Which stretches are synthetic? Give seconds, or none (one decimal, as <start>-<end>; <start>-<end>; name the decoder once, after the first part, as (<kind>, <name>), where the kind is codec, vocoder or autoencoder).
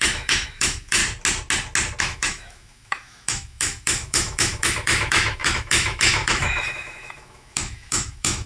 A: 0.0-1.0 (autoencoder, DAC-VAE); 2.0-8.5